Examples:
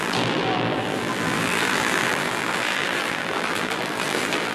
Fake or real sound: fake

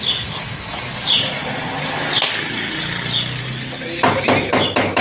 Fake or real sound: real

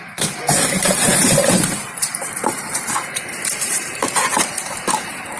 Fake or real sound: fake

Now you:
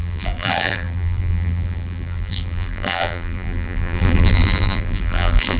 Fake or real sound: fake